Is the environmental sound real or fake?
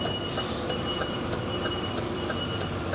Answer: fake